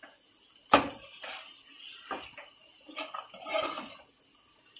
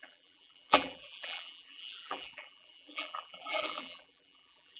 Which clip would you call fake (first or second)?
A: second